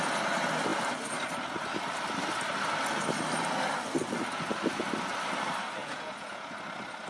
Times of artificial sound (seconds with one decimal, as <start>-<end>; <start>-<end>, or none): 5.8-6.5